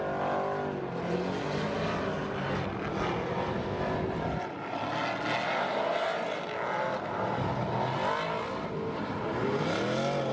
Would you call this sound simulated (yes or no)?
no